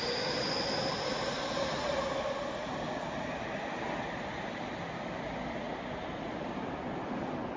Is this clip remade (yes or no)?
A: no